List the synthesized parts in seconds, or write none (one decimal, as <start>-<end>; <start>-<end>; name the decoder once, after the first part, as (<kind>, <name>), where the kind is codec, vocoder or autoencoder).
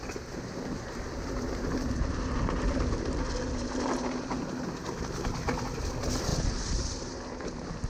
none